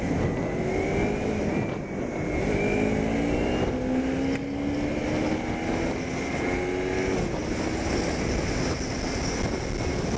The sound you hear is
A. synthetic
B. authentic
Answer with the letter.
B